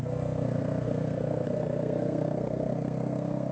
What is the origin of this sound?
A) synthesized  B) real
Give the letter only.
A